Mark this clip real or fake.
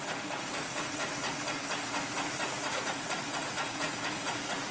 fake